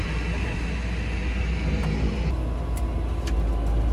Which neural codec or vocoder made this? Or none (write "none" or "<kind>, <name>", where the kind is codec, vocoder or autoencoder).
none